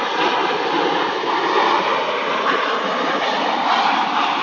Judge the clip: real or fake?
real